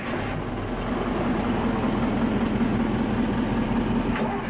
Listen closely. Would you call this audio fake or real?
real